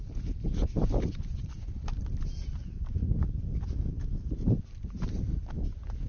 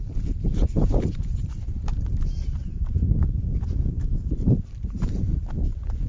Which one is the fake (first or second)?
second